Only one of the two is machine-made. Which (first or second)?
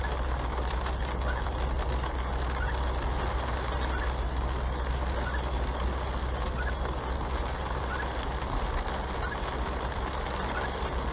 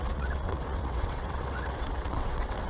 second